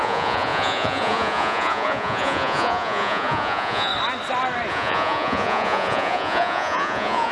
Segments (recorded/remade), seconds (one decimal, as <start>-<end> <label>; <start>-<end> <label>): 0.0-3.9 remade; 3.9-4.7 recorded; 4.7-7.3 remade